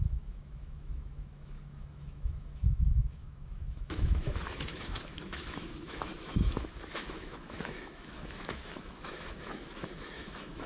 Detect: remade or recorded remade